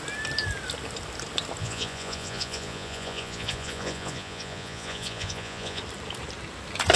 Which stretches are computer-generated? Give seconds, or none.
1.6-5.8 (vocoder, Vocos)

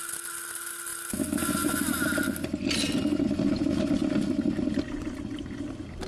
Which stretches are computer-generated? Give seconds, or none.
none

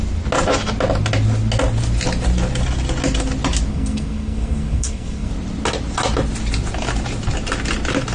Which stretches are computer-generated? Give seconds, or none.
3.7-5.3 (codec, SNAC)

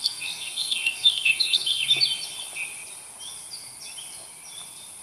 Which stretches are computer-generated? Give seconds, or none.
0.0-1.8 (codec, SNAC)

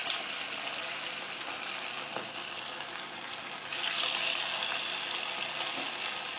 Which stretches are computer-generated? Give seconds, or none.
none

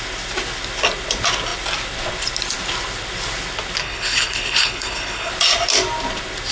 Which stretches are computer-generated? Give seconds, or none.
3.8-5.3 (codec, HILCodec)

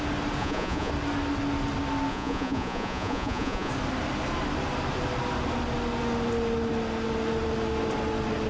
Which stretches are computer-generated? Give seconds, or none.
0.4-0.9 (vocoder, Vocos); 2.1-3.7